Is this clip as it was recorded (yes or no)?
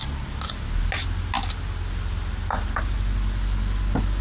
yes